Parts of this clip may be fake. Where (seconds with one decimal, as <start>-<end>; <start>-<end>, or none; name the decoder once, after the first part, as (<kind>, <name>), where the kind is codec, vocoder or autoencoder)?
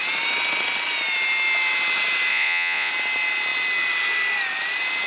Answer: 2.3-2.9 (vocoder, Vocos)